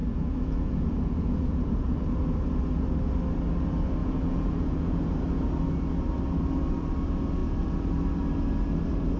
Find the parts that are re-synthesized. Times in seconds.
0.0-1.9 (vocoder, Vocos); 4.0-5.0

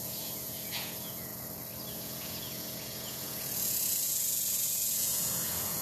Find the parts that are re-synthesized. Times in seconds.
0.0-1.3 (vocoder, Vocos); 1.9-5.8

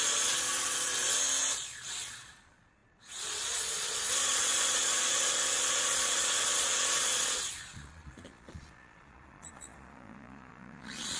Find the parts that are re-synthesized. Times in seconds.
0.0-0.9 (vocoder, Vocos); 1.4-11.2

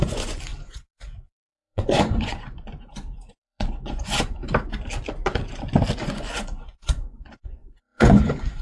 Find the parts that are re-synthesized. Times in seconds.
0.0-4.4 (vocoder, Vocos); 6.0-8.6

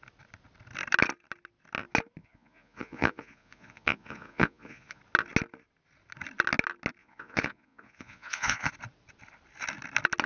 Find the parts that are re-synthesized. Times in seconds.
2.2-5.0 (vocoder, Vocos); 7.0-8.7

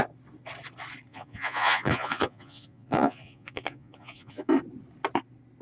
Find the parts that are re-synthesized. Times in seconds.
1.1-4.5 (vocoder, Vocos)

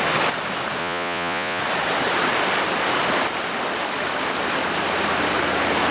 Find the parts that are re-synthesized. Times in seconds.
0.8-1.6 (vocoder, Vocos)

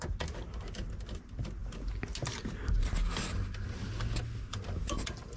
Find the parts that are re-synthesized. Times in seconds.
none